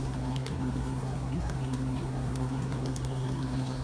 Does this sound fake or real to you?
fake